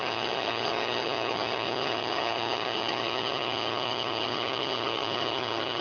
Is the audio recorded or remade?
remade